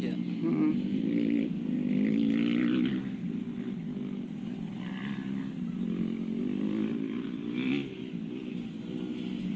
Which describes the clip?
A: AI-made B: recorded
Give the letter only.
B